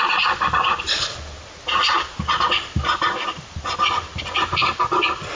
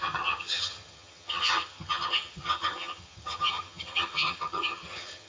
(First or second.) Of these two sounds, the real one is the first